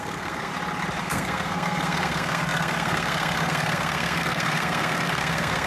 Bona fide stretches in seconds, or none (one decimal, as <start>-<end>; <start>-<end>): 0.5-1.0

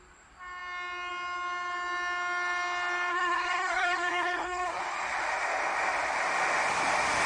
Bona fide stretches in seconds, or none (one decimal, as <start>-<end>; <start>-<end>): 0.0-3.1; 4.8-7.3

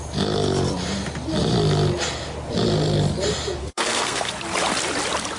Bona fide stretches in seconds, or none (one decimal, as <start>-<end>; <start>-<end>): 0.0-3.6; 4.3-5.4

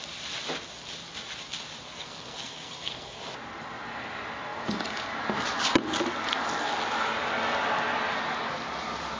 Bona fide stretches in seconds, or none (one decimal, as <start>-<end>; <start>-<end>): 0.0-1.9; 3.2-9.2

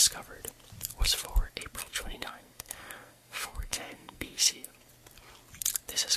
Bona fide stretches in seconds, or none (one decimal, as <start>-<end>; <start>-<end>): 0.0-1.8; 4.9-6.2

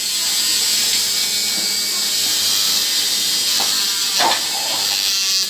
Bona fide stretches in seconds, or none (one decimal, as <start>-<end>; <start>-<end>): 0.0-5.5

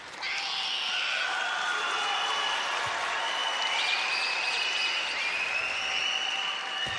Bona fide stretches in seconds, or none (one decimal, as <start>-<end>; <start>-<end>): 0.0-7.0